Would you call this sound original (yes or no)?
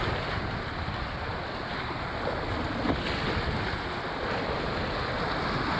yes